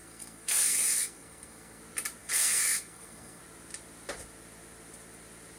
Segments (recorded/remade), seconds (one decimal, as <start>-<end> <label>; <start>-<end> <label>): 0.0-1.8 remade; 1.8-2.2 recorded; 2.2-3.4 remade; 3.4-5.6 recorded